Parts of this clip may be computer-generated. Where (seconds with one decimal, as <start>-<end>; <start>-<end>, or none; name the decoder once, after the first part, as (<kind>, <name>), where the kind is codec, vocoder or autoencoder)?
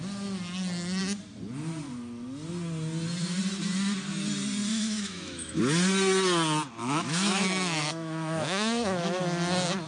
4.7-5.6 (autoencoder, DAC-VAE); 6.8-9.2